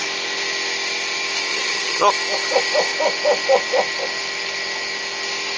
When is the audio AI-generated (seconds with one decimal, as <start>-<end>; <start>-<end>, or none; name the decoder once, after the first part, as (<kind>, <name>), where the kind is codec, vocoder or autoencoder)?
1.5-2.1 (vocoder, HiFi-GAN)